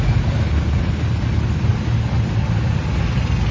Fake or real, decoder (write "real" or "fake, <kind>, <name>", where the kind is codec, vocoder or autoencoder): real